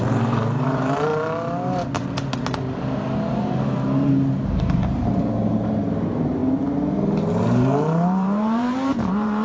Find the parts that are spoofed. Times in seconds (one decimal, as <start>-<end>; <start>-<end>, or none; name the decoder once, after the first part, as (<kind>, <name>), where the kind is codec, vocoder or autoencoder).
0.0-1.1 (vocoder, BigVGAN v2); 3.3-6.4; 7.3-9.4